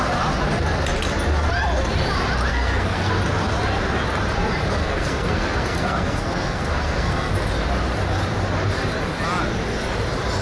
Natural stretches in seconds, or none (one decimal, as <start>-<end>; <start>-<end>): 0.0-2.5; 3.1-4.8; 7.3-10.4